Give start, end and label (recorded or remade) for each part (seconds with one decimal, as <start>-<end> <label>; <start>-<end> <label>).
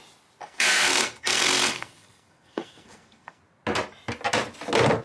0.0-0.4 recorded; 0.4-3.4 remade; 3.4-5.0 recorded